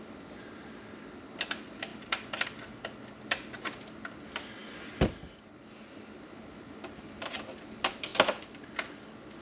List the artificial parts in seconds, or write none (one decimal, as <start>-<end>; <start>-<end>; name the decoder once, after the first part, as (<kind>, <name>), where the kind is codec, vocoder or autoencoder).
none

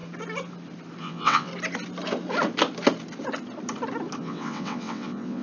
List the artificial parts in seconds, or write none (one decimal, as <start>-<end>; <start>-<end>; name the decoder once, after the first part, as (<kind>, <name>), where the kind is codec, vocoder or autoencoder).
1.0-1.5 (vocoder, WaveNeXt); 4.2-5.4